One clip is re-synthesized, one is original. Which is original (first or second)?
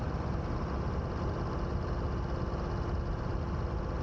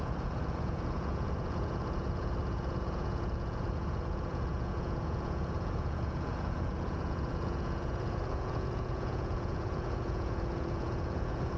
first